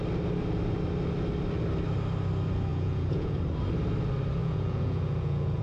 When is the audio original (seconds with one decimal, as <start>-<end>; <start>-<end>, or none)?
0.0-2.7; 3.4-4.4